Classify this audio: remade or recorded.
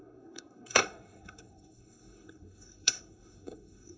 remade